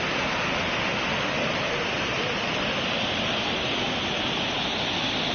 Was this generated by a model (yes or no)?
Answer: no